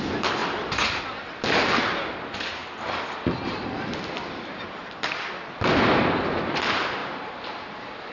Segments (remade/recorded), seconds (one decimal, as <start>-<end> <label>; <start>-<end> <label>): 0.0-0.4 recorded; 0.4-1.0 remade; 1.0-2.6 recorded; 2.6-5.5 remade; 5.5-7.0 recorded; 7.0-8.1 remade